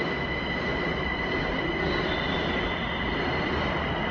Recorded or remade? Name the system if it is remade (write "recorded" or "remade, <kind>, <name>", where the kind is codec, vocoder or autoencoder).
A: recorded